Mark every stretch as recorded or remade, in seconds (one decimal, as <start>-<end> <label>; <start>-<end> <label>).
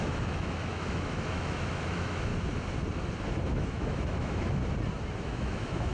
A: 0.0-2.3 remade; 2.3-3.5 recorded; 3.5-4.6 remade; 4.6-5.2 recorded; 5.2-5.9 remade